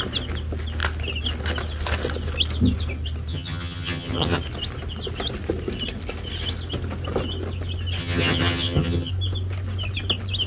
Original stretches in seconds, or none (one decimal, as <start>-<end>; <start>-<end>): 0.0-3.3; 4.4-8.0; 9.1-10.5